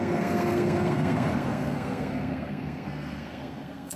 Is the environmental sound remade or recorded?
remade